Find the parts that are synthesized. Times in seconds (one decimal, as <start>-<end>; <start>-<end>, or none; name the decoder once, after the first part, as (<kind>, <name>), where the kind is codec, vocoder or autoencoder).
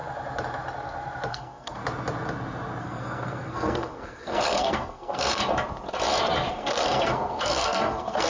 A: 1.3-1.8 (codec, SNAC); 2.8-5.4; 6.5-8.3